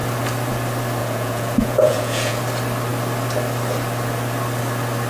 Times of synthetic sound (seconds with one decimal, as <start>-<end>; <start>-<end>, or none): 1.0-2.4

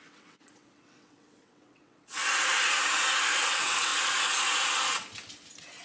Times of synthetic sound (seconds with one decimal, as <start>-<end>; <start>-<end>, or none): 0.0-2.2; 3.4-3.9

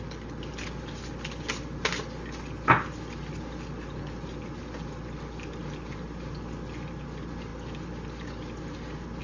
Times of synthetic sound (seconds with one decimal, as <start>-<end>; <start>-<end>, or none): none

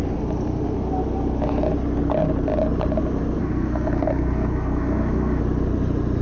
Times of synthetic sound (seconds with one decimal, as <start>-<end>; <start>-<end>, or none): 3.4-5.4

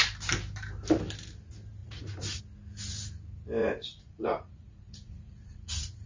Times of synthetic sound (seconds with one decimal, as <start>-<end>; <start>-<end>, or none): 1.8-2.4; 3.6-6.1

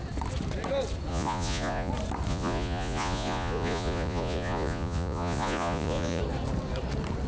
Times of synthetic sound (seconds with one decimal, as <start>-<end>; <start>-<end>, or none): 1.1-1.9; 2.3-6.2

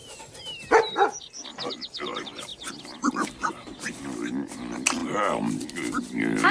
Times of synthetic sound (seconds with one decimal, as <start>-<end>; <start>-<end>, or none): none

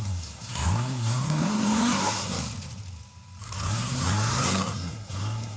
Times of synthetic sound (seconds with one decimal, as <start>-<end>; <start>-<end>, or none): 0.0-2.4; 3.4-5.6